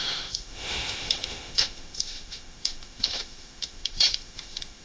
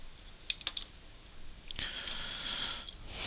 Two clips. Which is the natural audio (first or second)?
second